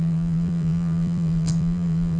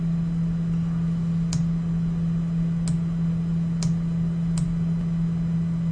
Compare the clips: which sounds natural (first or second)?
second